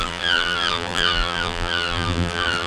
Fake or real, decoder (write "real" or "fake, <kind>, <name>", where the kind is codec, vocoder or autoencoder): fake, vocoder, BigVGAN v2